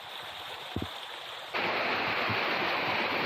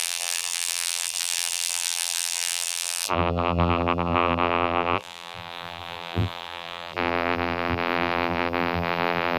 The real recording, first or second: first